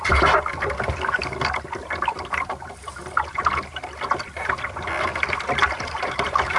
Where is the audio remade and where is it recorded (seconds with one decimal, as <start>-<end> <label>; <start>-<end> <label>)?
0.0-5.6 recorded; 5.6-6.6 remade